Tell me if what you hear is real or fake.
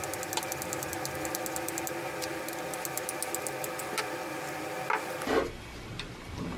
real